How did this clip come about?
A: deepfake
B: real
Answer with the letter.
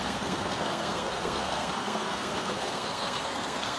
A